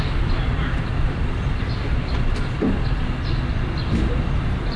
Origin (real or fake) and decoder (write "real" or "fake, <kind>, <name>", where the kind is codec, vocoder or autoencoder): real